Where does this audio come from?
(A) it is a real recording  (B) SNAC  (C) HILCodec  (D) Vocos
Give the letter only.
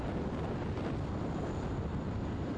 A